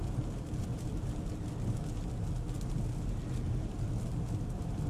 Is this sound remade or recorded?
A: recorded